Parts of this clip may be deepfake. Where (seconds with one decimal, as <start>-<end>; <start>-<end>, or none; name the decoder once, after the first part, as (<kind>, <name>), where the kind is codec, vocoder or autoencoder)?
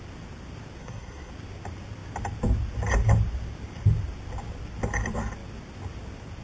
0.8-1.3 (codec, SNAC)